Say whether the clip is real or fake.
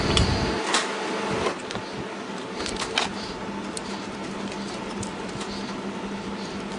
real